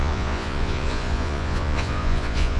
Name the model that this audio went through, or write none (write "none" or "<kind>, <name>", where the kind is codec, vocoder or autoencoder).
vocoder, Vocos